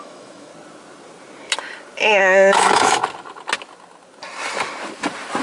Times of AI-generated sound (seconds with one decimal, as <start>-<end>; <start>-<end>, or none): 0.0-0.5; 2.2-3.0